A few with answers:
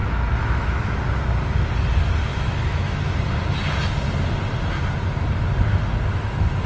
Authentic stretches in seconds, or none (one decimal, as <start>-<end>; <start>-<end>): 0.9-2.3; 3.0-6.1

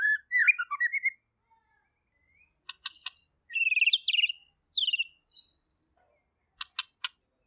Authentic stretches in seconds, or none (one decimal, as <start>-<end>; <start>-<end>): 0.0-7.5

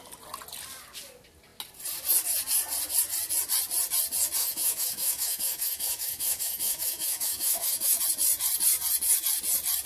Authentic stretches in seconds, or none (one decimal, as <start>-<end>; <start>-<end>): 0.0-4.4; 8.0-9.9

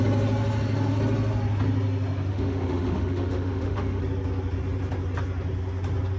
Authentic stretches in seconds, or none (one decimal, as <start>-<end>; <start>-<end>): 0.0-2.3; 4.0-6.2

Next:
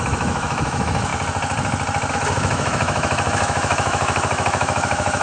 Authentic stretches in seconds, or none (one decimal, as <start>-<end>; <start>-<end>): 1.1-2.1